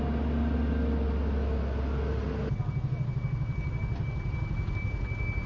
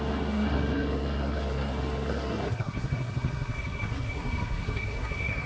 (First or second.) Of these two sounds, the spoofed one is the second